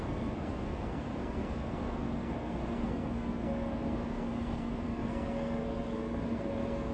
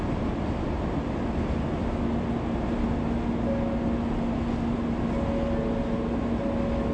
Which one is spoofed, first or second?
first